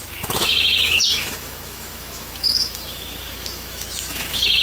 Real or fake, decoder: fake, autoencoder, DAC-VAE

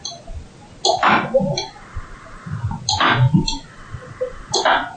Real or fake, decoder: real